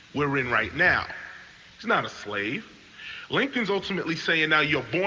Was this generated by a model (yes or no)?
no